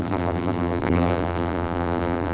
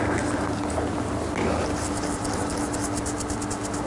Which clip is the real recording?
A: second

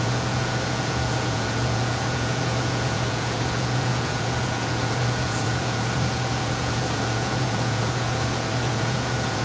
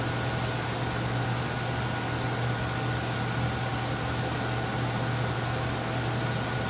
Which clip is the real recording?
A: second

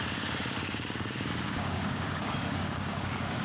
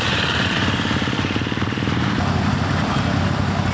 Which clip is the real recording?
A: second